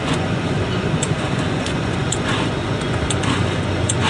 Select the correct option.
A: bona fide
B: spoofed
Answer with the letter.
B